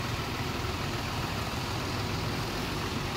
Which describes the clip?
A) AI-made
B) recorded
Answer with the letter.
A